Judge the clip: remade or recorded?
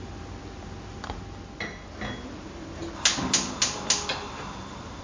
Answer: recorded